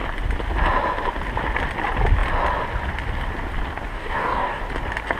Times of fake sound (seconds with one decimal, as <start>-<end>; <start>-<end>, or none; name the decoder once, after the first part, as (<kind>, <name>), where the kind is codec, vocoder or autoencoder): 3.9-4.6 (codec, DAC)